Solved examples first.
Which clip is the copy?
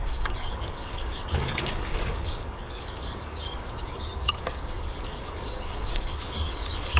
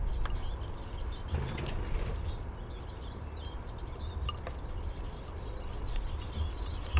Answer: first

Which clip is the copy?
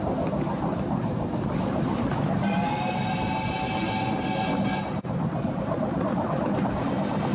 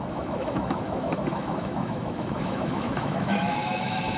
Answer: second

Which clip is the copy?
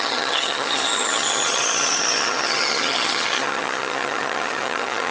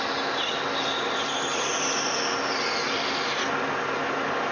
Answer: first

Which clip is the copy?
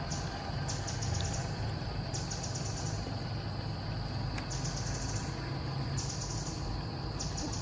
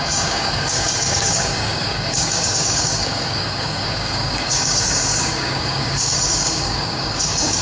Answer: second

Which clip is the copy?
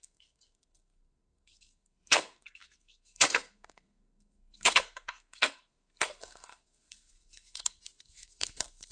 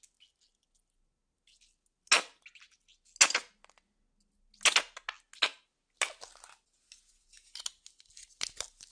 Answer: first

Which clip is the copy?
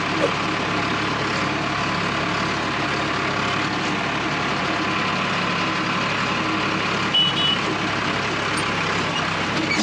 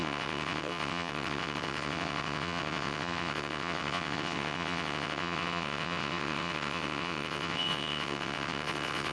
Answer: second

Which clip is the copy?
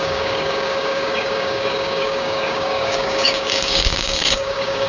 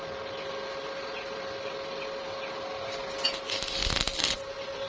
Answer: first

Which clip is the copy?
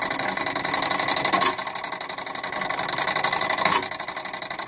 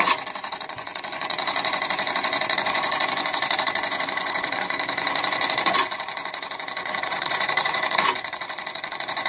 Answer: second